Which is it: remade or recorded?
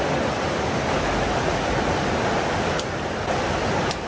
recorded